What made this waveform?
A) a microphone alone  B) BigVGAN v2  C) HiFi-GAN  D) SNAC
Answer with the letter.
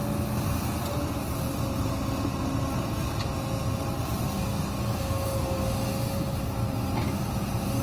A